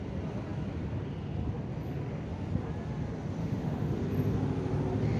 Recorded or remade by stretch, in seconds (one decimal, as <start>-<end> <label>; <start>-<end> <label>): 0.0-3.4 recorded; 3.4-4.0 remade; 4.0-5.2 recorded